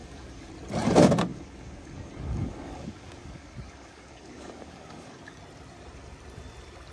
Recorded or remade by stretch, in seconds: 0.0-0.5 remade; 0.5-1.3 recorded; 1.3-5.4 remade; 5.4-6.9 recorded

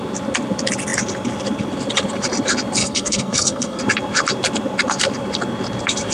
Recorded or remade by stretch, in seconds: 0.0-2.8 recorded; 2.8-3.8 remade; 3.8-6.1 recorded

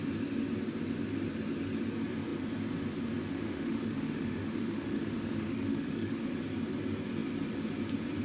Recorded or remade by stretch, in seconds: 0.0-3.3 recorded; 3.3-6.3 remade; 6.3-8.2 recorded

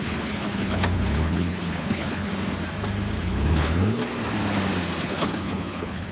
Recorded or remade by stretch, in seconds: 0.0-2.3 remade; 2.3-3.2 recorded; 3.2-4.0 remade; 4.0-5.0 recorded; 5.0-6.1 remade

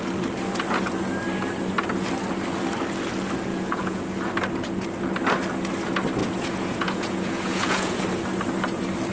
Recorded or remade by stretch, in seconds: 0.0-3.5 recorded; 3.5-4.1 remade; 4.1-6.2 recorded; 6.2-8.0 remade; 8.0-9.1 recorded

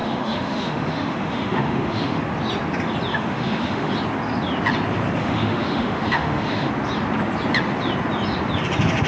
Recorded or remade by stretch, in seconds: 0.0-2.2 remade; 2.2-3.1 recorded; 3.1-3.9 remade; 3.9-5.2 recorded; 5.2-6.7 remade; 6.7-9.1 recorded

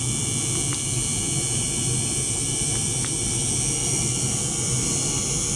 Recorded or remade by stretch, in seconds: 0.0-5.6 recorded

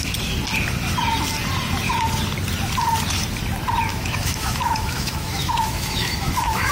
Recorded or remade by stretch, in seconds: 0.0-3.9 recorded; 3.9-6.7 remade